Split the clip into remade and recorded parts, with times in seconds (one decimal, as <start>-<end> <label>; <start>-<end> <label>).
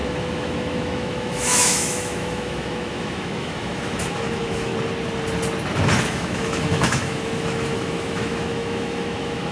0.0-4.7 remade; 4.7-6.0 recorded; 6.0-9.5 remade